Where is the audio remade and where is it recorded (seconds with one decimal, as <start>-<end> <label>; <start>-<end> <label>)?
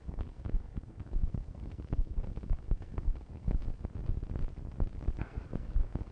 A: 0.0-3.6 remade; 3.6-5.2 recorded; 5.2-6.1 remade